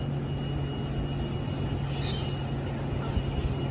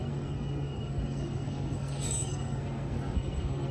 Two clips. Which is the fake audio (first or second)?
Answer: second